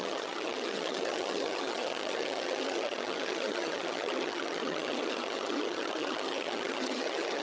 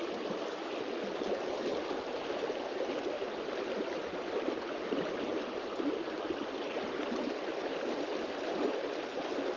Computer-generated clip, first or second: first